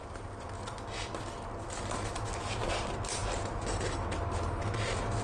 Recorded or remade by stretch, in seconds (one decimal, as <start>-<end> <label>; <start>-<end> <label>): 0.0-5.2 recorded